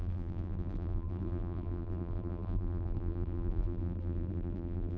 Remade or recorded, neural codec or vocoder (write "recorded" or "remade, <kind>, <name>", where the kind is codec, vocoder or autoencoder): remade, vocoder, BigVGAN v2